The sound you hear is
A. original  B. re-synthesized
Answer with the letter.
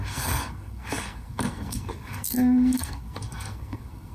B